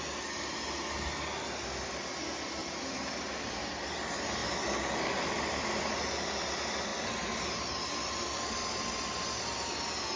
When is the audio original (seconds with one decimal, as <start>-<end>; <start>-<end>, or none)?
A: 0.0-2.6; 3.5-10.2